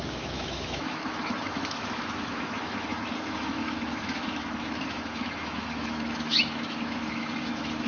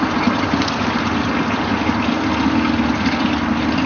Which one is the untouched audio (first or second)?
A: second